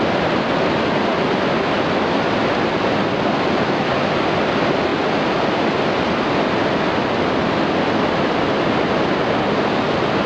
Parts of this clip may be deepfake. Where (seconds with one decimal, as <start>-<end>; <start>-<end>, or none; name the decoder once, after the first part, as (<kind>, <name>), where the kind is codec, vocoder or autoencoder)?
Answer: none

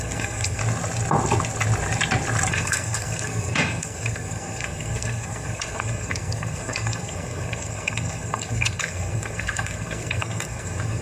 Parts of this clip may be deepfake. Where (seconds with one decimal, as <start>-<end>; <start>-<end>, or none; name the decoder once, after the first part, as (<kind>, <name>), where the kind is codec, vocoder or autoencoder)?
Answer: 0.0-0.6 (codec, SNAC); 2.5-11.0

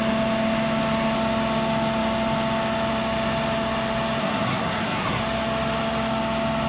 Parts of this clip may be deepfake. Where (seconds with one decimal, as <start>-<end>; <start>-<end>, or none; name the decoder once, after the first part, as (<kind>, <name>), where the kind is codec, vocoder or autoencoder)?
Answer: 4.2-5.2 (codec, SNAC)

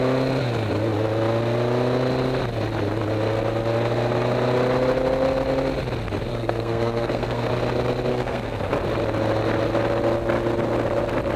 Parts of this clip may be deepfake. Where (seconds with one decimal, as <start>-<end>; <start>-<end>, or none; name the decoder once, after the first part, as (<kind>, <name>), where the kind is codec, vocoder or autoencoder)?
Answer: 6.3-7.5 (codec, SNAC); 8.1-8.7